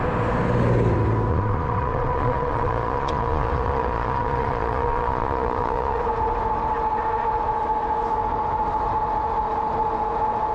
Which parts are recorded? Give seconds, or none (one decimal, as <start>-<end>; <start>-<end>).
0.0-1.3; 6.0-10.5